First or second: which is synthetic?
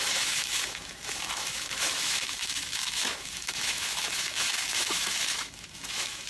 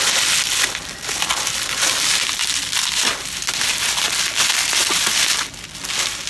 first